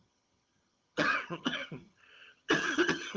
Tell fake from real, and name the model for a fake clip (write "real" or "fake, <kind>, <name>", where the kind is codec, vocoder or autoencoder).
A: fake, vocoder, HiFi-GAN